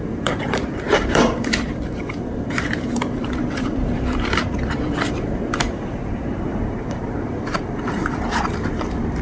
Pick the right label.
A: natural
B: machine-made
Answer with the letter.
B